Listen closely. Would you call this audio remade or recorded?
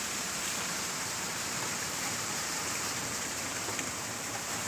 remade